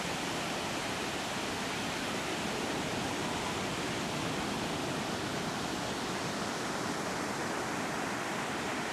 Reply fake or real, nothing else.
real